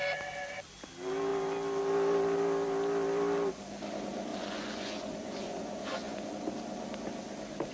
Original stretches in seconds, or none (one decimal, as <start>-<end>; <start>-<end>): 0.0-4.3; 6.3-7.7